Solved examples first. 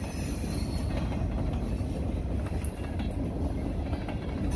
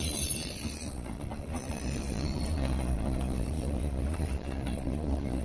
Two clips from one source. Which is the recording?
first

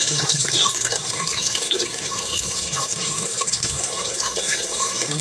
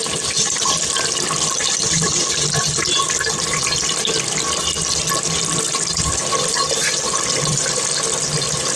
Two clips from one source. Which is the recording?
second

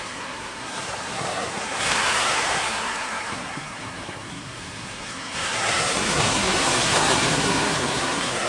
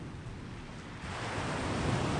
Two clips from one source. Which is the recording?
second